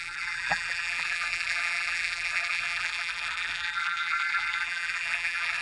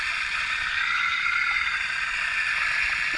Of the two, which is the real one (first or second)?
second